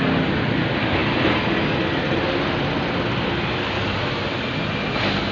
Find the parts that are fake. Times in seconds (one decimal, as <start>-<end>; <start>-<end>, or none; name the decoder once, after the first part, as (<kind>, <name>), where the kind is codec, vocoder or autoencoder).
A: none